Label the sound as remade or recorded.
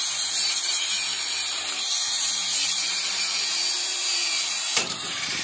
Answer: remade